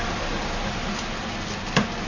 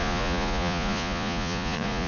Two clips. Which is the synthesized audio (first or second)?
second